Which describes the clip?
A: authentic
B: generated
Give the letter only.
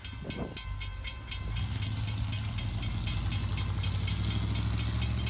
A